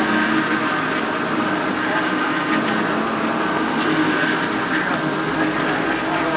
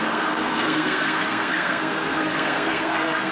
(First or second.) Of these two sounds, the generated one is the second